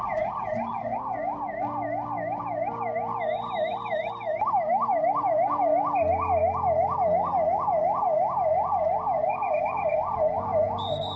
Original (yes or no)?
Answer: yes